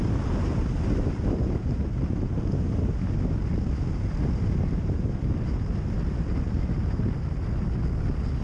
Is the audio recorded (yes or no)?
yes